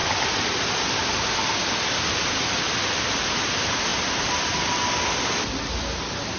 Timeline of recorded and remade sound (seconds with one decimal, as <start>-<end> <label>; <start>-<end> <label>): 0.0-6.4 recorded